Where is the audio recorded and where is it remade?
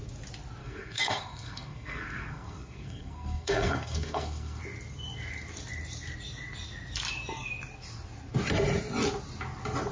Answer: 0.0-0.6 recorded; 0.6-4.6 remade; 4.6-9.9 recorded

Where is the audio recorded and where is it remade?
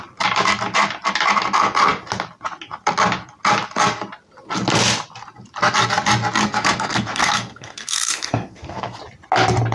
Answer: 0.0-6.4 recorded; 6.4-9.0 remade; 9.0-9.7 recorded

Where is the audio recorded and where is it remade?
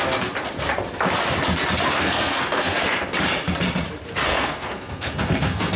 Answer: 0.0-1.9 recorded; 1.9-3.0 remade; 3.0-4.3 recorded; 4.3-5.8 remade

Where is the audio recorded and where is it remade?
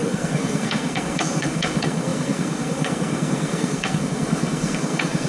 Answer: 0.0-5.3 remade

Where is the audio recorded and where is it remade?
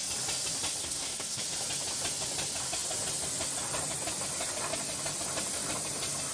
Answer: 0.0-0.8 recorded; 0.8-1.4 remade; 1.4-6.3 recorded